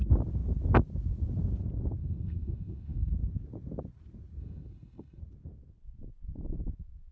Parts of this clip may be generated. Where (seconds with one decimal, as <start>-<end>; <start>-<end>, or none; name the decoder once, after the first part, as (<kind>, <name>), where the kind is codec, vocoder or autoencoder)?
2.0-3.1 (codec, SNAC); 4.4-5.2